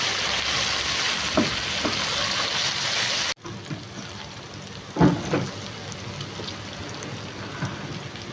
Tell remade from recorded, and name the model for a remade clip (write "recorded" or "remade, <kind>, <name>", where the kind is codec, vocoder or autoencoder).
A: recorded